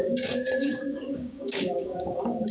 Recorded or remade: remade